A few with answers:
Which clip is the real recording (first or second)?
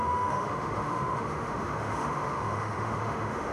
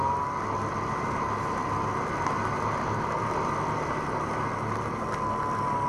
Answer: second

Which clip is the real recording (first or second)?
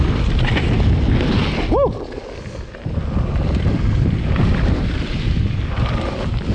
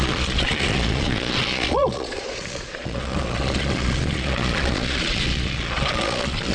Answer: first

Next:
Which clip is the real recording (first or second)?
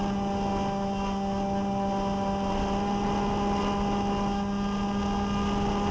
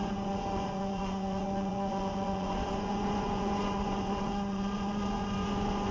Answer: first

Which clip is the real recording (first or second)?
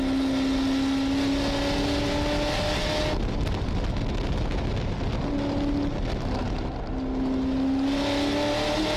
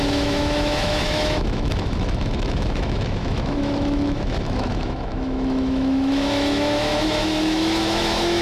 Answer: first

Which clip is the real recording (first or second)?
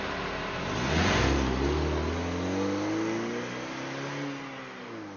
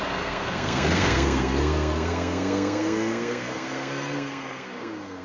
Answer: first